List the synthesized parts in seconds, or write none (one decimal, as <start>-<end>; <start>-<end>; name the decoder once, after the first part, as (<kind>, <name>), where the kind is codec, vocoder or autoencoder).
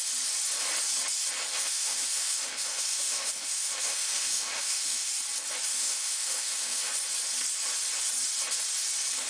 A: 1.5-5.1 (autoencoder, DAC-VAE); 5.7-6.9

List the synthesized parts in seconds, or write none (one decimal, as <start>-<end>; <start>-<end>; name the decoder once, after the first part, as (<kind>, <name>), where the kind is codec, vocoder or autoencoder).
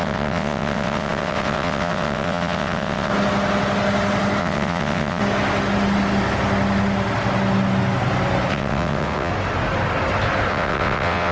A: 0.0-3.1 (vocoder, WaveNeXt); 4.4-5.2; 8.5-9.3; 10.5-11.3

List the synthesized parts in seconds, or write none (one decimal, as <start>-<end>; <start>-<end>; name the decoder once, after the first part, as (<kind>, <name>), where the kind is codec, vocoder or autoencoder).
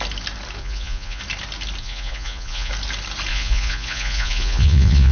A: 0.6-1.2 (vocoder, Vocos); 1.8-2.7; 3.3-5.1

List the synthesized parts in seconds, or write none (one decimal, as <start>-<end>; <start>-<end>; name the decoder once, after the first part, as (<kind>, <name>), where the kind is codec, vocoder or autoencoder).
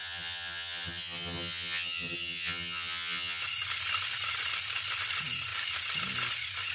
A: 0.0-3.4 (vocoder, HiFi-GAN)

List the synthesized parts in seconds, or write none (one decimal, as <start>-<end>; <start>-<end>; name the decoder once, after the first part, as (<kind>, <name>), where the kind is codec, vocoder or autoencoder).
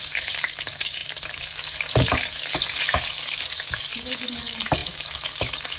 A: 0.0-5.8 (codec, DAC)